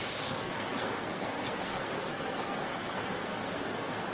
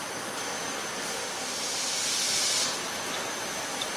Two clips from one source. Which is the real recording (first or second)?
second